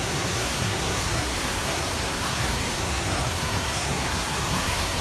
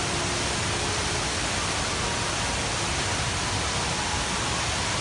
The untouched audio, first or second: second